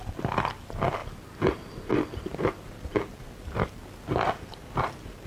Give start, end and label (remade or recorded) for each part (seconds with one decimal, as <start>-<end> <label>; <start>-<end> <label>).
0.0-5.3 recorded